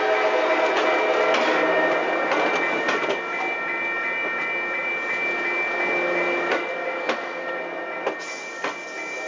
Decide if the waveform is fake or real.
real